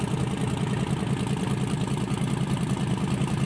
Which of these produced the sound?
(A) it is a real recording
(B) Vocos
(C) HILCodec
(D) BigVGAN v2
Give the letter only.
A